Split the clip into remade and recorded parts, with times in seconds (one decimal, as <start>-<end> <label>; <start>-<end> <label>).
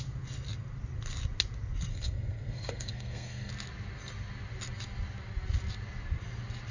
0.0-1.9 recorded; 1.9-3.5 remade; 3.5-6.7 recorded